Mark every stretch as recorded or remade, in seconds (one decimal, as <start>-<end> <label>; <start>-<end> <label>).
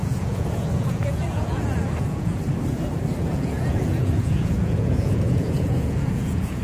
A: 0.0-2.4 remade; 2.4-3.2 recorded; 3.2-6.6 remade